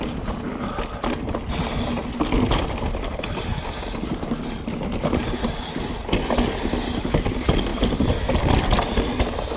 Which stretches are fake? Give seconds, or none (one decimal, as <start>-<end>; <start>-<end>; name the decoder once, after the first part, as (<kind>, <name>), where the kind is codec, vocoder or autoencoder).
none